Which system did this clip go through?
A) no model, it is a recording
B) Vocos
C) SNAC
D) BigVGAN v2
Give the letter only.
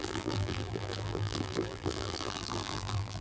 D